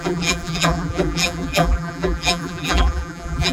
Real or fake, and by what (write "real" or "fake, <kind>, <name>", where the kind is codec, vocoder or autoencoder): fake, vocoder, BigVGAN v2